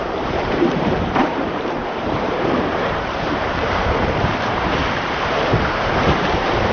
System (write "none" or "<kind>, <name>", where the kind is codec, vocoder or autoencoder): vocoder, BigVGAN v2